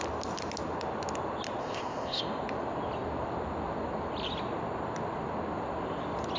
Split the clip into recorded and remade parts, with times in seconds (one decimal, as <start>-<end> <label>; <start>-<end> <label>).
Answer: 0.0-1.6 recorded; 1.6-2.2 remade; 2.2-6.4 recorded